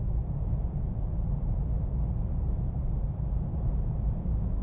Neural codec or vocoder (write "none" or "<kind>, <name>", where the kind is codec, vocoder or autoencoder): vocoder, BigVGAN v2